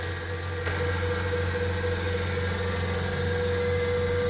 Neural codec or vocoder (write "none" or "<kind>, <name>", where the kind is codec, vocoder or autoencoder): none